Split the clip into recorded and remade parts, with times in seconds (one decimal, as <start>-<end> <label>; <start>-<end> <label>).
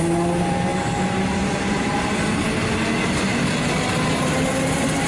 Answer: 0.0-5.1 recorded